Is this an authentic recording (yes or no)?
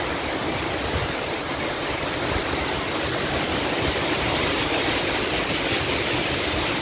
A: yes